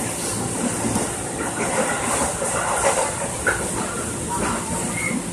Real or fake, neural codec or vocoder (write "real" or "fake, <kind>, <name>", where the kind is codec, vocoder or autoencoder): real